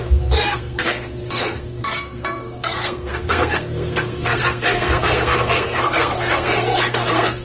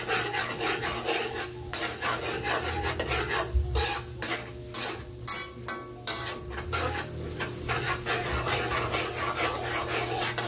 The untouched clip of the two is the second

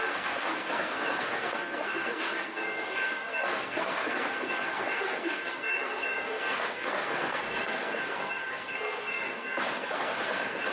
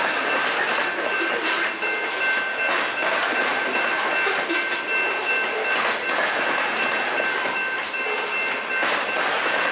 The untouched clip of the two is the second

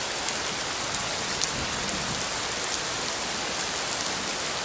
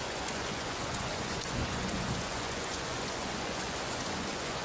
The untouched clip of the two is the first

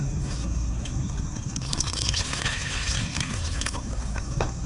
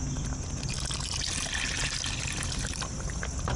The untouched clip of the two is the second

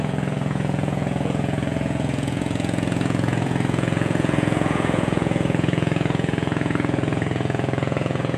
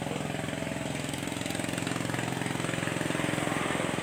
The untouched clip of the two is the second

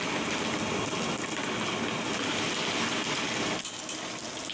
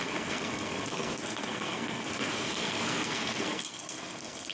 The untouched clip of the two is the first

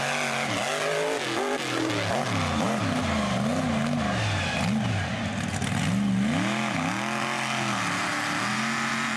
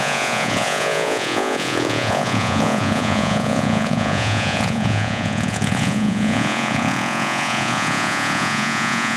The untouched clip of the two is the first